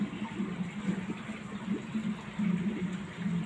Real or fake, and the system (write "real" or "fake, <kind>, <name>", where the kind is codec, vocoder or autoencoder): real